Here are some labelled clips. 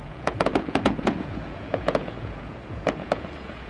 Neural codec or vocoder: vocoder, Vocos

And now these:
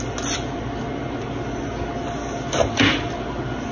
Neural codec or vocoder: none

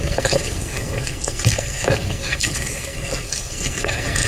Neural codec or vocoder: codec, SNAC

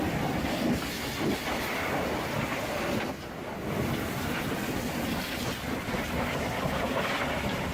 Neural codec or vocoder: none